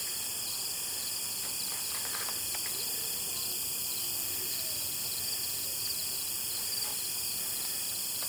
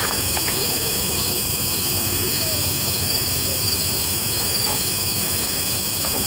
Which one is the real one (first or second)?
first